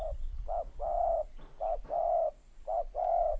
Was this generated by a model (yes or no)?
no